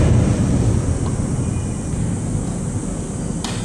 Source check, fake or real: real